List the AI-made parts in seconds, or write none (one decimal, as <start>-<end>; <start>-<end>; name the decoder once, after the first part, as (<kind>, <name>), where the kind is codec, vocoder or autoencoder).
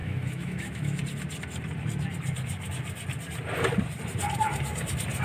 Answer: 0.0-1.0 (autoencoder, DAC-VAE)